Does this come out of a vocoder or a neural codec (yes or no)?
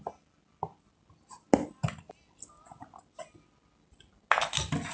no